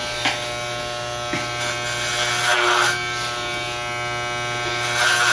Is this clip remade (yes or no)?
no